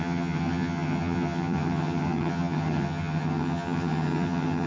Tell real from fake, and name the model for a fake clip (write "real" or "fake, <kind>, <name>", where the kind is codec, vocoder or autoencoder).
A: fake, vocoder, HiFi-GAN